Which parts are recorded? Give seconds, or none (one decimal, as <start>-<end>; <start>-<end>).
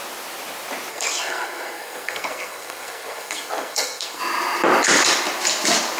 0.0-0.9; 4.2-6.0